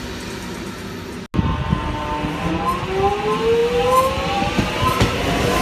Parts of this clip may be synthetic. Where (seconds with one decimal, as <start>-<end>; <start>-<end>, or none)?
none

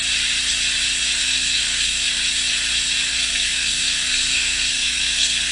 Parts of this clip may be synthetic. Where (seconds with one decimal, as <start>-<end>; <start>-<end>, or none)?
1.2-2.1; 3.1-5.5

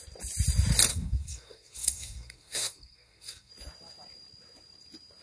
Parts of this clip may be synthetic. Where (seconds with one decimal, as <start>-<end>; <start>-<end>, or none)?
0.9-3.5

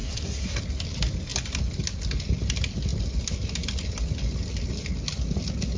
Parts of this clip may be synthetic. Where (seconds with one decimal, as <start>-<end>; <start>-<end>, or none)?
0.0-0.6

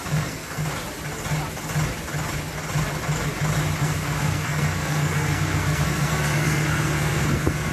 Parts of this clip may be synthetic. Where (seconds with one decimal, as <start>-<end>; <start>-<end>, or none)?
0.0-0.6; 3.8-7.7

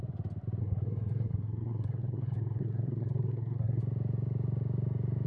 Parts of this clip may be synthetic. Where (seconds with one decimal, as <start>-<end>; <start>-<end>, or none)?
0.6-3.8

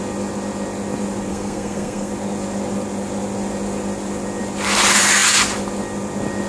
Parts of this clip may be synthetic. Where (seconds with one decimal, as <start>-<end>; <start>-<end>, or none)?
1.3-2.1